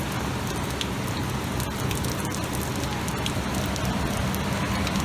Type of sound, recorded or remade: recorded